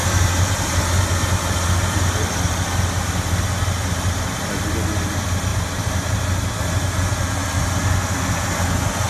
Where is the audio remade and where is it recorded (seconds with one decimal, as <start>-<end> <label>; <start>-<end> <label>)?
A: 0.0-0.8 remade; 0.8-5.5 recorded; 5.5-6.2 remade; 6.2-9.1 recorded

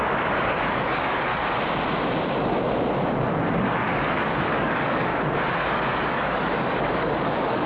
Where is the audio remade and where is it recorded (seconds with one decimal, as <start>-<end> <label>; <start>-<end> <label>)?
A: 0.0-1.3 remade; 1.3-3.5 recorded; 3.5-5.1 remade; 5.1-5.6 recorded; 5.6-7.7 remade

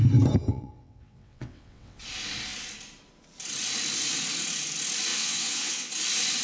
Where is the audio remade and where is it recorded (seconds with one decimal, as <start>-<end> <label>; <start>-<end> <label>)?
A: 0.0-0.5 recorded; 0.5-2.0 remade; 2.0-5.1 recorded; 5.1-5.9 remade; 5.9-6.4 recorded

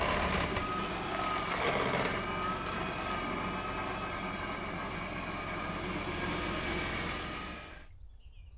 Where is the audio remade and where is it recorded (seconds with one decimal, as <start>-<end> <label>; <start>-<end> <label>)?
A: 0.0-8.6 recorded

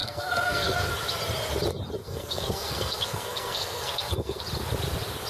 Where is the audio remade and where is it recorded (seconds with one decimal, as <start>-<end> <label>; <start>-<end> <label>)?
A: 0.0-0.9 remade; 0.9-2.0 recorded; 2.0-4.4 remade; 4.4-5.3 recorded

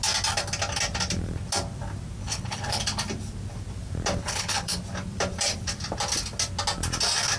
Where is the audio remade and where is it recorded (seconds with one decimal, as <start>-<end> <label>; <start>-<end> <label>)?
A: 0.0-2.2 recorded; 2.2-2.8 remade; 2.8-4.2 recorded; 4.2-4.8 remade; 4.8-7.4 recorded